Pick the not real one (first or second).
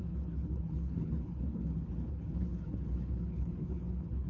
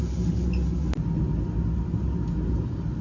first